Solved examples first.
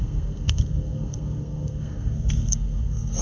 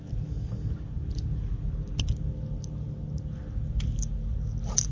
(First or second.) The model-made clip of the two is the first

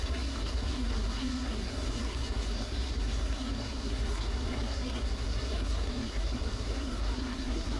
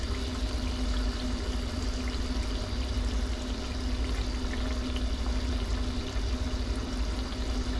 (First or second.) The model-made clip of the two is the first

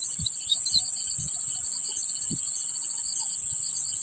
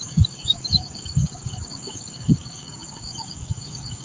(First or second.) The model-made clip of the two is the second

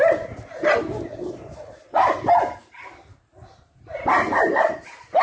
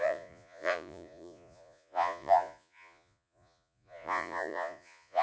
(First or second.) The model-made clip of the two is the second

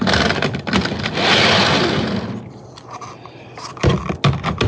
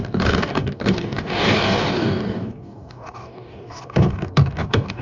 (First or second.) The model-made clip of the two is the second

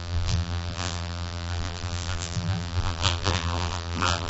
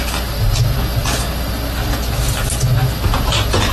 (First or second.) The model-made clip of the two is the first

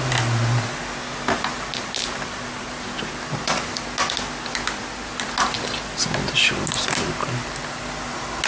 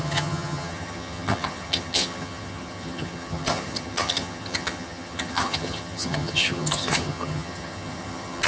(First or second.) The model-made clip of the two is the second